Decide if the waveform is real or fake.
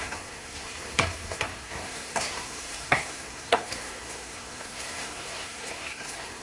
fake